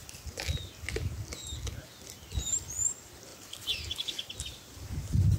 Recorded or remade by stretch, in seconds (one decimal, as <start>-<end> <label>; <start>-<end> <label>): 0.0-3.3 recorded; 3.3-4.3 remade; 4.3-5.4 recorded